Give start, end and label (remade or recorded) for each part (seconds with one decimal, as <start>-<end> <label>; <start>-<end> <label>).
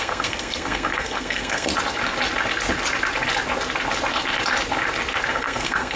0.0-1.7 remade; 1.7-5.3 recorded; 5.3-6.0 remade